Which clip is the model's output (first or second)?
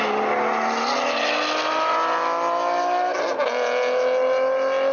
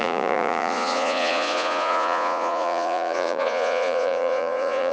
second